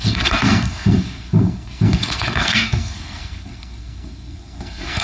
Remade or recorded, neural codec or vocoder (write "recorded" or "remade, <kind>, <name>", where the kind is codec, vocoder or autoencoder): remade, codec, SNAC